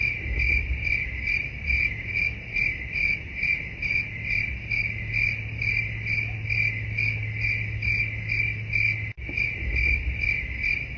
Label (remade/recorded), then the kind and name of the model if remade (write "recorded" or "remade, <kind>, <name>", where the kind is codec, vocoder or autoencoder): recorded